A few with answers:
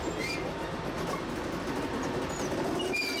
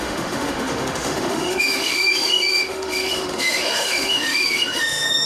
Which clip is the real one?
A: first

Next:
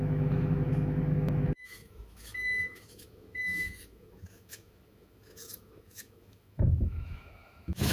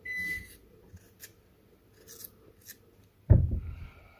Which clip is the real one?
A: second